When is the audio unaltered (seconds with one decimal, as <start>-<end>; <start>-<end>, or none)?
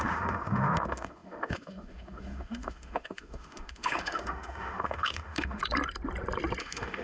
5.6-6.6